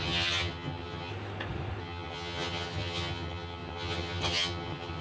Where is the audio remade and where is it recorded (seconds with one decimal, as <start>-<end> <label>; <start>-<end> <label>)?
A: 0.0-1.1 remade; 1.1-1.8 recorded; 1.8-5.0 remade